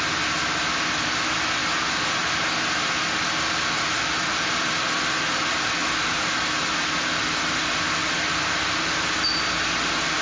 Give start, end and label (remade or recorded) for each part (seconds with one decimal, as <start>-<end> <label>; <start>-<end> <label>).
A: 0.0-10.2 recorded